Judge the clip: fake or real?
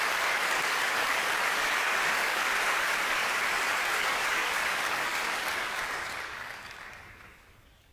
fake